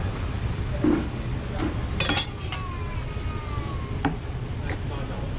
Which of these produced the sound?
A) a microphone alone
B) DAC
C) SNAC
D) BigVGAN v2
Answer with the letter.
A